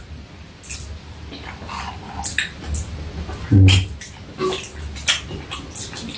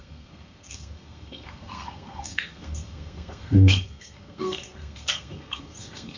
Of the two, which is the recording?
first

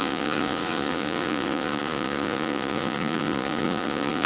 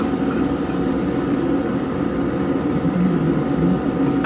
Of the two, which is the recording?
second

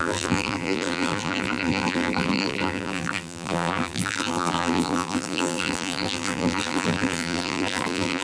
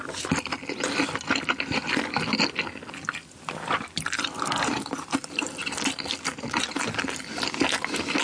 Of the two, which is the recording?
second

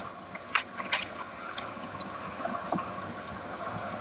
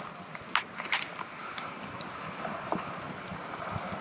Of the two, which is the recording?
second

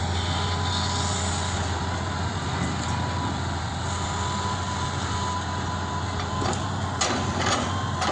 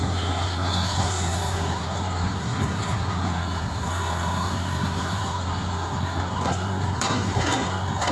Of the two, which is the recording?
first